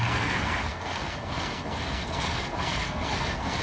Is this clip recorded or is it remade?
remade